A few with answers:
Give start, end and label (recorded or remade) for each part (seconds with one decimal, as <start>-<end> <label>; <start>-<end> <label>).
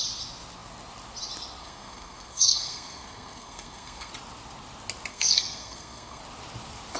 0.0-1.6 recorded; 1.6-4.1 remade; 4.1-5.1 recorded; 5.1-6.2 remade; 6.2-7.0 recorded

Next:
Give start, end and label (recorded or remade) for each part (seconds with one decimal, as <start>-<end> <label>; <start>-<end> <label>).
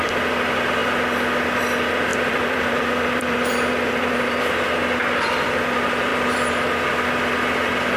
0.0-2.1 recorded; 2.1-4.4 remade; 4.4-6.1 recorded; 6.1-6.9 remade; 6.9-8.0 recorded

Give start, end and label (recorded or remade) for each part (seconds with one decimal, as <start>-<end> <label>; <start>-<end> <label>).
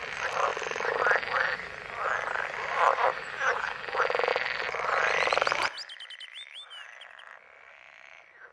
0.0-0.5 recorded; 0.5-1.0 remade; 1.0-4.3 recorded; 4.3-5.3 remade; 5.3-8.5 recorded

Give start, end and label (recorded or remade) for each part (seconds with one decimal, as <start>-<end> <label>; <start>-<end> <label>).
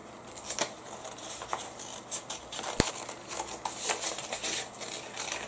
0.0-5.5 recorded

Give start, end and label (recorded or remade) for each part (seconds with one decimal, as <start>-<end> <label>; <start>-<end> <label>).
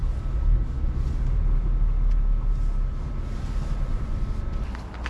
0.0-3.9 recorded; 3.9-5.1 remade